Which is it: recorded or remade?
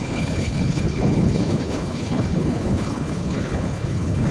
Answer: remade